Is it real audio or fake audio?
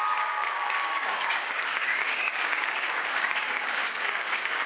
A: fake